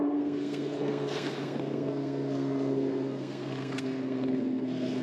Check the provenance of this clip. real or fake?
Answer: fake